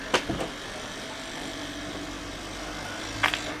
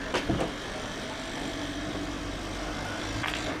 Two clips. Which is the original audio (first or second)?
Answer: first